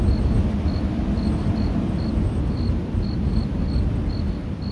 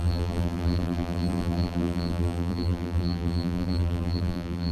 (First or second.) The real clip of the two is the first